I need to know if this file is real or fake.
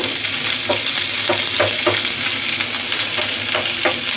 real